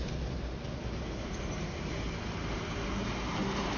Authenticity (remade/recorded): recorded